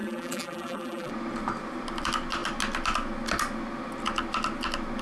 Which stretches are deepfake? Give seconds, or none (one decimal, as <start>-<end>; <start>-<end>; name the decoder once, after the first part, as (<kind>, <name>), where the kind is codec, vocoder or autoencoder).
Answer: 0.0-1.1 (vocoder, BigVGAN v2)